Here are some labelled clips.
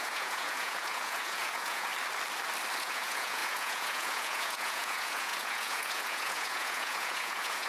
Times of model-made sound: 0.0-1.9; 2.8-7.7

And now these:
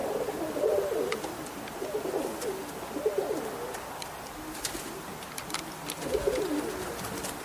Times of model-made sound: none

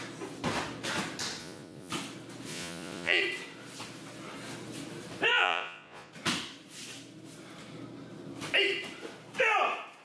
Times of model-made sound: 1.4-1.9; 2.5-3.2; 5.3-6.1

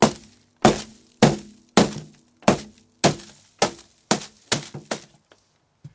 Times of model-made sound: none